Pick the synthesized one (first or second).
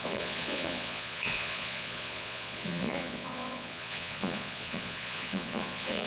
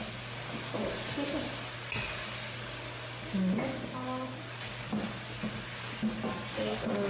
first